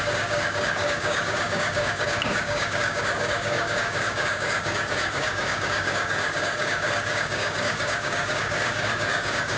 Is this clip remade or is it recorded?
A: remade